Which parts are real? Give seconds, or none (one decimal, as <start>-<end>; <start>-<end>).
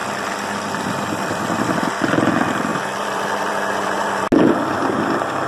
1.9-2.7; 4.3-5.5